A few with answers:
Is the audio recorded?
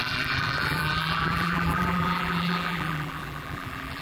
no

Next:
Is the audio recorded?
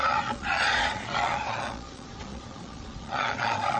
no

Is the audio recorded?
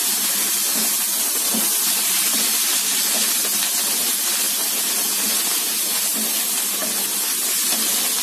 yes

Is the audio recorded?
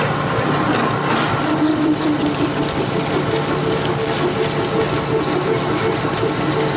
yes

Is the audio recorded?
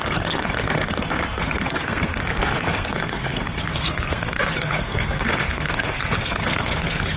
no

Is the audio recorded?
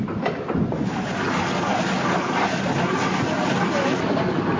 yes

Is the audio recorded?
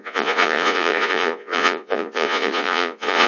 no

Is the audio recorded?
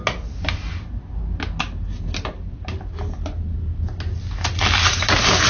yes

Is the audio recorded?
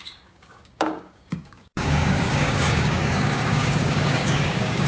no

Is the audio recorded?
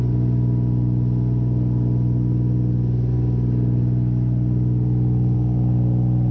yes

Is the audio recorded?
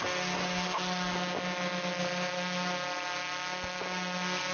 yes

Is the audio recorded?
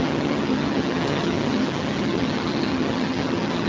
no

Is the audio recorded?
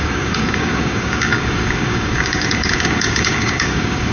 no